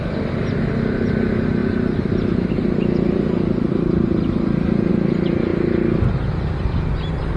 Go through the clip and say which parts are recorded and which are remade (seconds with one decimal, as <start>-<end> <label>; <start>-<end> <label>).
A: 0.0-7.4 recorded